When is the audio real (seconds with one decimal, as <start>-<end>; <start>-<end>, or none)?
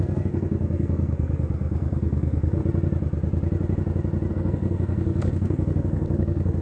2.6-4.3